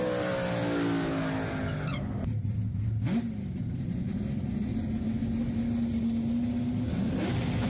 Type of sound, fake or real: real